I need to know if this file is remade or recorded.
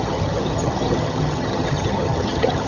remade